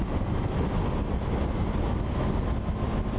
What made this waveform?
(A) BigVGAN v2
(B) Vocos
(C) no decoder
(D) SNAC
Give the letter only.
C